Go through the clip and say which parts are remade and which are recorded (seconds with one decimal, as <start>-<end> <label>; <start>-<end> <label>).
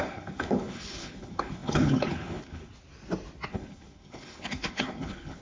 0.0-2.7 remade; 2.7-3.5 recorded; 3.5-5.4 remade